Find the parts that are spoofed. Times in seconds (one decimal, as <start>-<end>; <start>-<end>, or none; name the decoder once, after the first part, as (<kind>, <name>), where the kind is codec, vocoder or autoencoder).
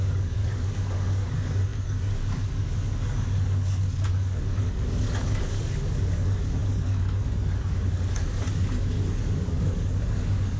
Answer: 0.0-10.6 (codec, DAC)